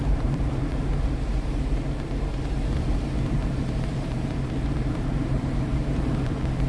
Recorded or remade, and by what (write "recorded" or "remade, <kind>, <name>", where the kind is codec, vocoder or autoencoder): remade, vocoder, BigVGAN v2